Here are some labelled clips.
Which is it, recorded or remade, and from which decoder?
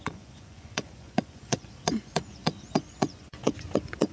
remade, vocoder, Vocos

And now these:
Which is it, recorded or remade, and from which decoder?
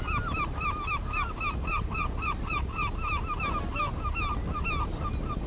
recorded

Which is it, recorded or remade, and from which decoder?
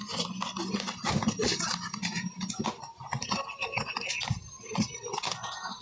recorded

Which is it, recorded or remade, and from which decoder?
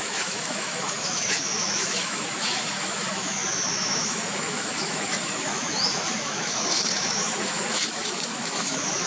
remade, autoencoder, DAC-VAE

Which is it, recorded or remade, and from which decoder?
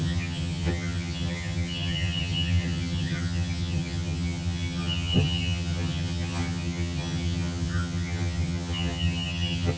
remade, vocoder, HiFi-GAN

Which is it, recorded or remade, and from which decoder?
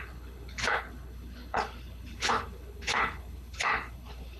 remade, codec, HILCodec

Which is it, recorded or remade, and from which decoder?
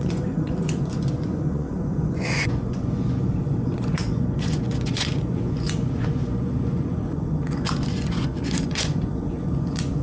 remade, vocoder, Vocos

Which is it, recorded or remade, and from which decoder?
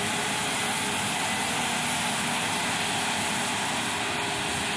recorded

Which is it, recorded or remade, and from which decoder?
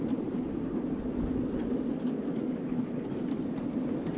recorded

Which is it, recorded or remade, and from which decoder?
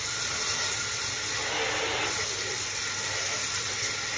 recorded